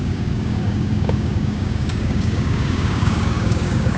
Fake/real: fake